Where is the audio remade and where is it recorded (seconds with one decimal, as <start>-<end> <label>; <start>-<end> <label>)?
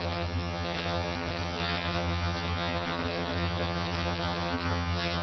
0.0-5.2 remade